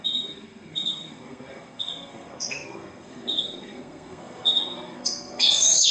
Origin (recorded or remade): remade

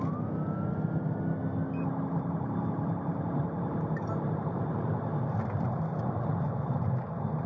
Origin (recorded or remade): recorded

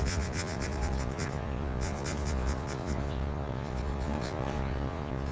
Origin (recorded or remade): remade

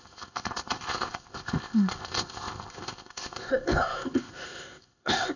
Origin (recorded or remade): remade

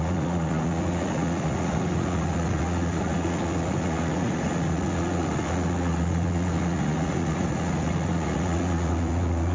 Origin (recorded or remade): remade